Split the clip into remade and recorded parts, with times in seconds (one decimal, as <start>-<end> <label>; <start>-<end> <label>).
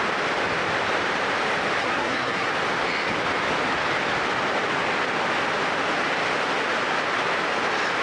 0.0-1.8 recorded; 1.8-2.5 remade; 2.5-8.0 recorded